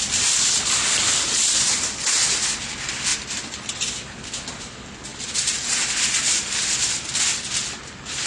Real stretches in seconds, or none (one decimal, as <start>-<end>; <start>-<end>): 0.0-3.1; 3.9-5.1; 5.7-8.3